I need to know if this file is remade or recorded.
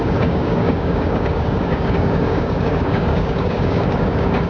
remade